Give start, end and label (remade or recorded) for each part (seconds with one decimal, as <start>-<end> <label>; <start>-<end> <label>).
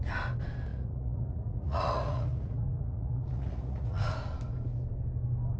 0.0-0.7 recorded; 0.7-4.1 remade; 4.1-5.6 recorded